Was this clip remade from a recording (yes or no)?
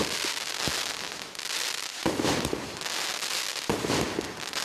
no